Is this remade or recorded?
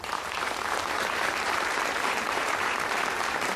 remade